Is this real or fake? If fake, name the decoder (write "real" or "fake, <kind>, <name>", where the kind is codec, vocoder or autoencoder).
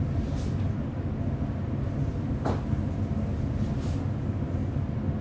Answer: real